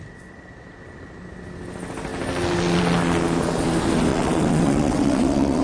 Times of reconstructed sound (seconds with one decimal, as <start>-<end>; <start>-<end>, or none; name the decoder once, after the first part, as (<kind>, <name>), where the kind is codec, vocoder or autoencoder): 4.1-5.6 (vocoder, WaveNeXt)